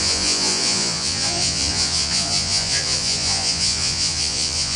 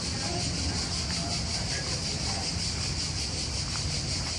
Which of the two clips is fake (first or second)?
first